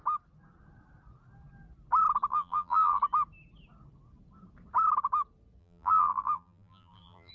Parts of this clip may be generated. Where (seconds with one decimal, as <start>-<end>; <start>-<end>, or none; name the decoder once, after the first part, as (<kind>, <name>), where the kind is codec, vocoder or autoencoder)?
2.3-3.0 (vocoder, BigVGAN v2); 5.6-7.3